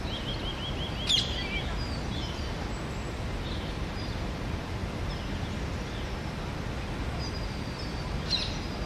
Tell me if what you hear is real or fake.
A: real